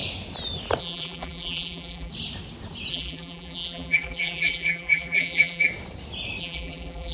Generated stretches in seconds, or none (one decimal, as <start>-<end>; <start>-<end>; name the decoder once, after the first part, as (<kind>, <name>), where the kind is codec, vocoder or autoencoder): 0.8-2.1 (vocoder, BigVGAN v2); 2.9-5.7; 6.4-7.1